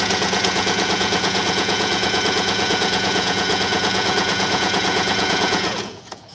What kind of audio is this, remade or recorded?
remade